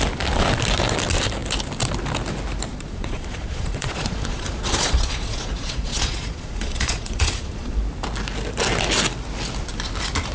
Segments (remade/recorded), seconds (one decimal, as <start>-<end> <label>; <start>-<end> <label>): 0.0-2.7 recorded; 2.7-7.8 remade; 7.8-10.3 recorded

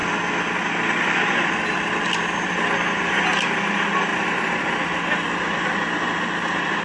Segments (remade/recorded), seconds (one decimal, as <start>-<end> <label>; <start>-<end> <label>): 0.0-6.8 recorded

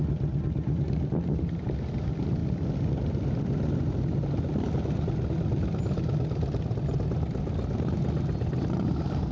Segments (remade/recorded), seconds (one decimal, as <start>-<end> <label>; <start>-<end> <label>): 0.0-9.3 recorded